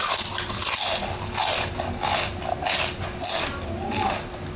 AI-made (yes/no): no